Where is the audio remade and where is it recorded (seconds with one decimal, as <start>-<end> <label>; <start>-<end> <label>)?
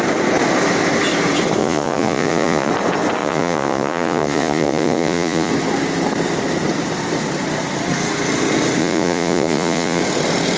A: 0.0-1.6 recorded; 1.6-2.7 remade; 2.7-3.2 recorded; 3.2-5.5 remade; 5.5-8.8 recorded; 8.8-10.0 remade; 10.0-10.6 recorded